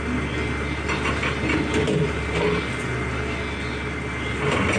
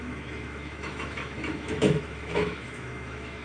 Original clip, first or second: first